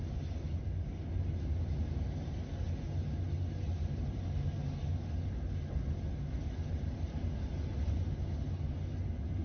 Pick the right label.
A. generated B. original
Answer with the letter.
B